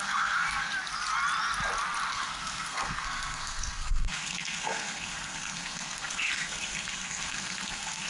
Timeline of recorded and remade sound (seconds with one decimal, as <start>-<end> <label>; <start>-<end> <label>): 0.0-0.7 remade; 0.7-2.1 recorded; 2.1-8.1 remade